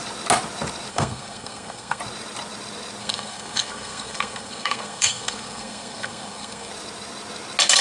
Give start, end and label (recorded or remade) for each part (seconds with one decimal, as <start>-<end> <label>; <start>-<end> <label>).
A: 0.0-0.9 recorded; 0.9-2.0 remade; 2.0-3.0 recorded; 3.0-6.7 remade; 6.7-7.8 recorded